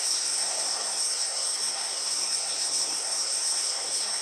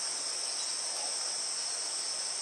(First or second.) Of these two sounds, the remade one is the first